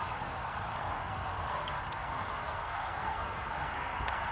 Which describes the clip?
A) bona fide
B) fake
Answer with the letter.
B